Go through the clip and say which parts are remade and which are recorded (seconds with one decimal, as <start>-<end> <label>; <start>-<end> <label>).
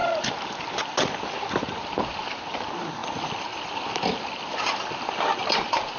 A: 0.0-6.0 recorded